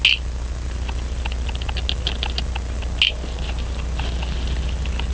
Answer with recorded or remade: recorded